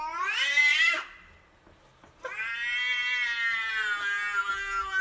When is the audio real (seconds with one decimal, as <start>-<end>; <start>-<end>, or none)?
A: 0.0-5.0